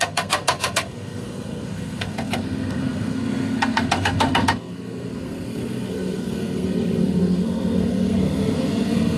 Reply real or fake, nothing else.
fake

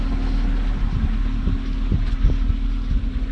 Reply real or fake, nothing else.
real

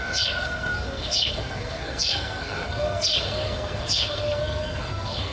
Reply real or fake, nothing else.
fake